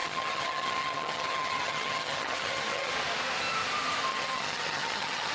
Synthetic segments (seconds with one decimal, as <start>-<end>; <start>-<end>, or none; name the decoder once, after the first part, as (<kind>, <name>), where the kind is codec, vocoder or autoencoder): 0.0-2.9 (vocoder, HiFi-GAN); 4.1-5.3